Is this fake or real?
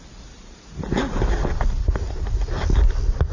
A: real